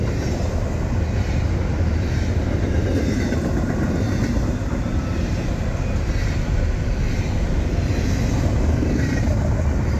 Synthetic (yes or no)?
no